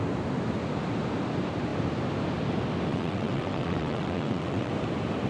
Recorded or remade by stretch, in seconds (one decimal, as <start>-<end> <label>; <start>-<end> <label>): 0.0-2.9 recorded; 2.9-4.7 remade; 4.7-5.3 recorded